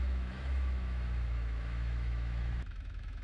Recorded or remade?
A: remade